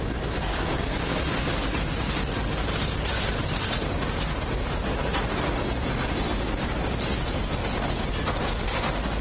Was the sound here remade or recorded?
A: recorded